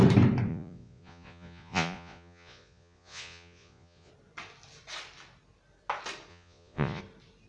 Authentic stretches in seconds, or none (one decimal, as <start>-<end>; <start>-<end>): 0.0-0.5; 4.1-6.3; 7.0-7.5